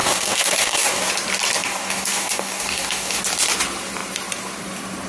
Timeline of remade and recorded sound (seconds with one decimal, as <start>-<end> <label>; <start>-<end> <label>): 0.0-1.1 remade; 1.1-1.6 recorded; 1.6-3.2 remade; 3.2-5.1 recorded